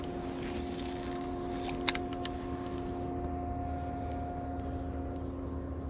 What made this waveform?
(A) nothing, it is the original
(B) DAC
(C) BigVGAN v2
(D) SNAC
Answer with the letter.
A